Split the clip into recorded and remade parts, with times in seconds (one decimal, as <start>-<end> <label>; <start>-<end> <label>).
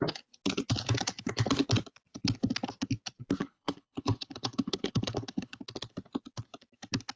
0.0-3.4 recorded; 3.4-5.6 remade; 5.6-7.2 recorded